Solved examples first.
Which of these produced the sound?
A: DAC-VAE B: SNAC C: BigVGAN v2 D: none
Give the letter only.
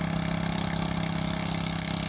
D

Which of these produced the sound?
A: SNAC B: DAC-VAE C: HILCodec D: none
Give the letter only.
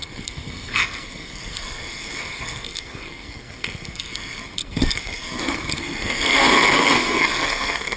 A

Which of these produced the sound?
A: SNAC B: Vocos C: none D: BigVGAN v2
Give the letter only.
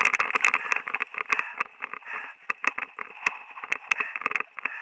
C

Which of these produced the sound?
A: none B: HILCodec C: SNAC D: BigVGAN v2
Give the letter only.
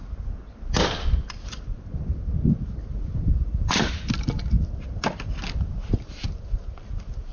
A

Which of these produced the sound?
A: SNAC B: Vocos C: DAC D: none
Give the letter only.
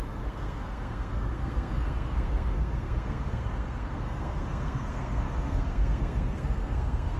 A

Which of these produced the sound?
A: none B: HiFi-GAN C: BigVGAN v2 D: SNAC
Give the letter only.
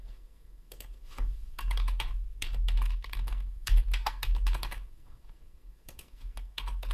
D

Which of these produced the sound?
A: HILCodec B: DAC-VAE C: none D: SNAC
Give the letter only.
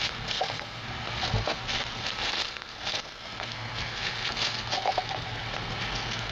D